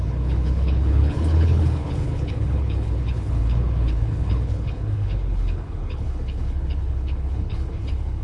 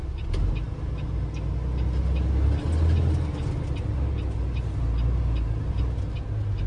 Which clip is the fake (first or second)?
first